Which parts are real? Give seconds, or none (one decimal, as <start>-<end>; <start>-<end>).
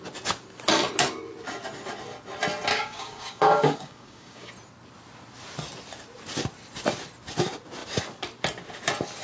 0.0-2.7; 4.5-9.2